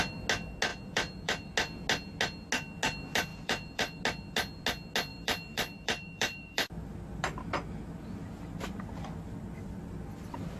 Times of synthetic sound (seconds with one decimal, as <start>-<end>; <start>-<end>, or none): 0.7-1.5; 3.3-4.0; 5.1-7.9